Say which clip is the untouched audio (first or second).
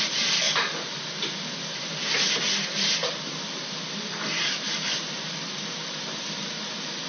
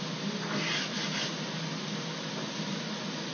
second